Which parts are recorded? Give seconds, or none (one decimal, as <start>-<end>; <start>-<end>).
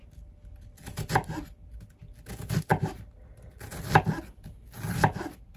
0.0-5.6